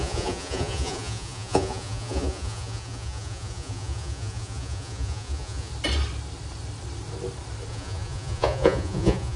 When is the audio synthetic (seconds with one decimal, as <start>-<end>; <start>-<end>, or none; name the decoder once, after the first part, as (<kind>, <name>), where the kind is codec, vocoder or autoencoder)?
0.0-5.7 (vocoder, Vocos); 7.7-9.4